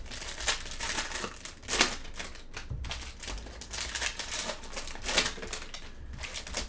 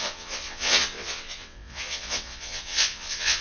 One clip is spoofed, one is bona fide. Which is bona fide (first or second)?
first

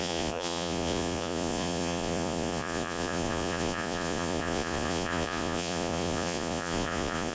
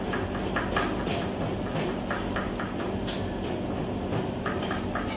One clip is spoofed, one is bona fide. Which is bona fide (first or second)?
second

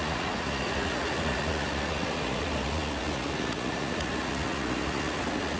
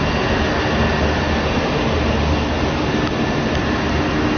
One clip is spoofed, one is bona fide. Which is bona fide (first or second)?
second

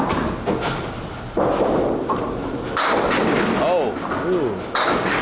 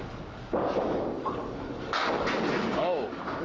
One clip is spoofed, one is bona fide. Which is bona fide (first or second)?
first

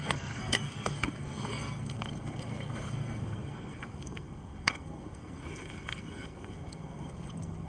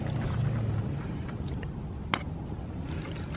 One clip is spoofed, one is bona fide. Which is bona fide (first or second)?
second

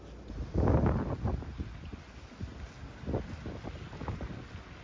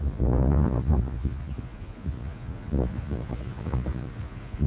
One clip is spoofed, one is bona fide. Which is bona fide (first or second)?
first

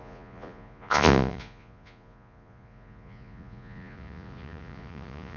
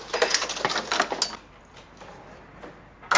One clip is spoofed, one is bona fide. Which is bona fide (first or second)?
second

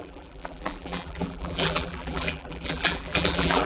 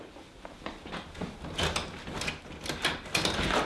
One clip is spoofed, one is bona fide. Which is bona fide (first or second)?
second